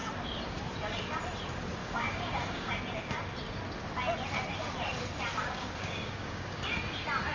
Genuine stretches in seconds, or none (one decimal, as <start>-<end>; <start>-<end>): 0.0-1.8; 2.7-5.3; 6.6-7.3

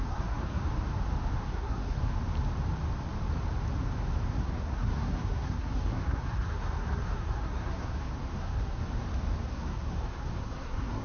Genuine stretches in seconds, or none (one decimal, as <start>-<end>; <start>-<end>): 0.6-1.4; 2.1-4.3; 8.8-9.4

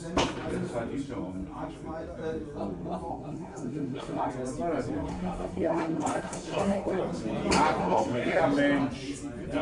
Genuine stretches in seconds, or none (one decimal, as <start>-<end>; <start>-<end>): 0.0-3.1; 4.3-5.1; 7.0-7.8; 8.4-9.6

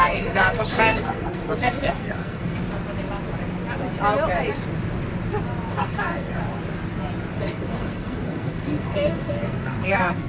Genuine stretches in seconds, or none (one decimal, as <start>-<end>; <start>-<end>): 2.6-5.7; 6.4-7.4

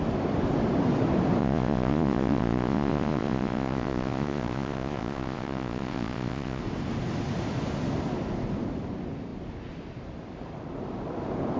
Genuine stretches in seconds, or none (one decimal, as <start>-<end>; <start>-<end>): 0.0-1.4; 6.6-11.6

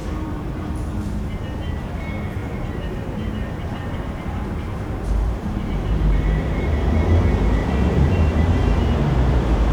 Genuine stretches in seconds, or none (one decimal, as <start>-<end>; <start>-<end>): 0.7-2.4; 6.9-7.6; 9.0-9.7

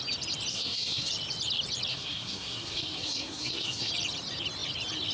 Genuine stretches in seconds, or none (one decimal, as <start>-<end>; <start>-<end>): 0.0-0.5; 1.1-1.9; 3.9-5.1

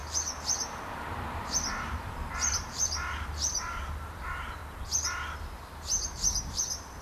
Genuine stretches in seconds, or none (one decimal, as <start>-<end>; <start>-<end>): 4.6-5.4